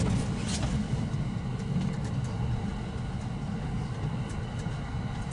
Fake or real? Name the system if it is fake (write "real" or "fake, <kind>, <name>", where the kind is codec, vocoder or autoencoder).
real